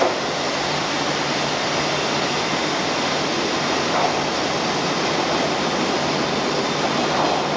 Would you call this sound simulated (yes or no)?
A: no